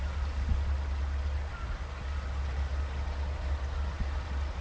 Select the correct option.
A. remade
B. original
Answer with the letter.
B